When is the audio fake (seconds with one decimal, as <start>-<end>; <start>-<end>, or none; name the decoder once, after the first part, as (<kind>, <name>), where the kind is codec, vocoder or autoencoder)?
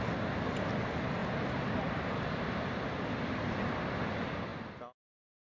none